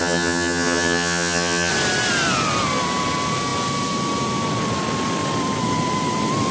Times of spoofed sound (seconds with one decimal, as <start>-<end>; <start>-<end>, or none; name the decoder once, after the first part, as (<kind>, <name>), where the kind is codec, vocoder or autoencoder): 0.0-1.7 (vocoder, HiFi-GAN)